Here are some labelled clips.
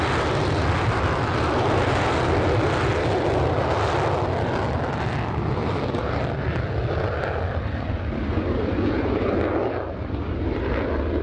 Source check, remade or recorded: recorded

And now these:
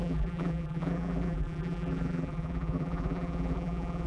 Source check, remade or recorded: remade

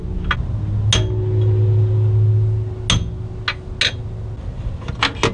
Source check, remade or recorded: recorded